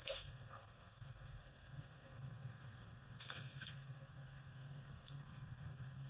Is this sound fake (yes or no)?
yes